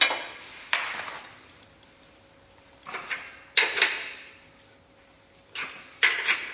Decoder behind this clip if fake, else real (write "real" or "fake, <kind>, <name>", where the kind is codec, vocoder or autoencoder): real